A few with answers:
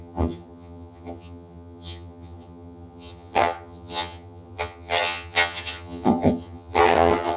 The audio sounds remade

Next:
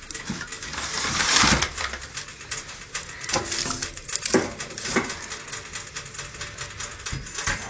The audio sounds recorded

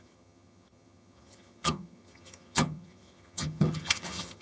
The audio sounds remade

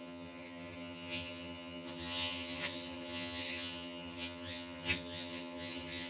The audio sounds remade